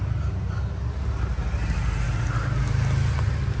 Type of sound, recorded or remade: recorded